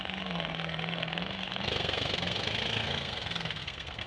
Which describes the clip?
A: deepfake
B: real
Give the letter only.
A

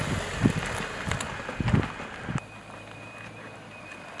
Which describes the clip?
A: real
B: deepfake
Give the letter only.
A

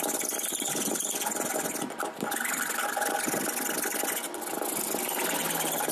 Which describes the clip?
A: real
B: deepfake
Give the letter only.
A